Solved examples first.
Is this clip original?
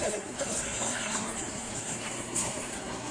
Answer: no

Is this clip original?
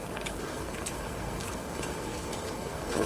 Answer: no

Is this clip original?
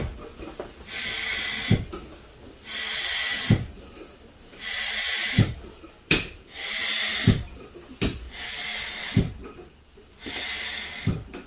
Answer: yes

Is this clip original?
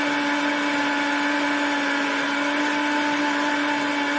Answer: yes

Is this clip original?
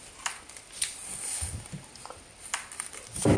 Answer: yes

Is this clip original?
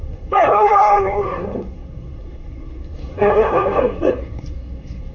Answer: no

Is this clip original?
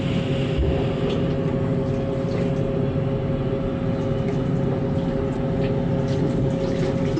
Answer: yes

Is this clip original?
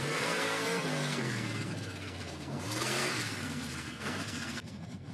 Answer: no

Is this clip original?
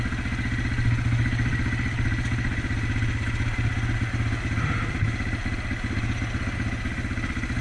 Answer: yes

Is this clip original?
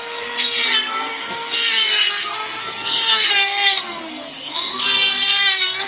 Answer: no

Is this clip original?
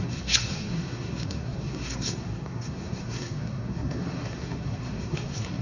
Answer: no